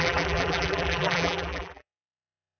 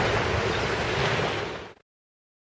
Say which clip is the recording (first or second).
second